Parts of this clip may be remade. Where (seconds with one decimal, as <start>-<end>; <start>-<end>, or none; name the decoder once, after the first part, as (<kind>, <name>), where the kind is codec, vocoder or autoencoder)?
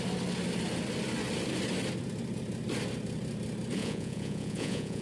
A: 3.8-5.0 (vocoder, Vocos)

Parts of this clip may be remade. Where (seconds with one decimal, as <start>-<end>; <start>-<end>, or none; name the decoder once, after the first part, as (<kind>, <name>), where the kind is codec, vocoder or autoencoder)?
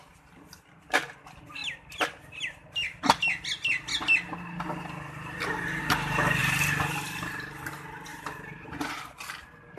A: none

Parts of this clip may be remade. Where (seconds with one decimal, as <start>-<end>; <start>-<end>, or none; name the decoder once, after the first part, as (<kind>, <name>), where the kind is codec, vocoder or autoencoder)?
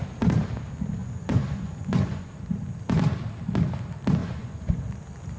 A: 1.0-2.3 (vocoder, Vocos); 4.2-4.8